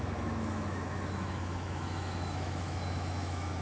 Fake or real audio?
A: fake